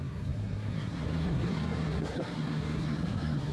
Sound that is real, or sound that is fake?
fake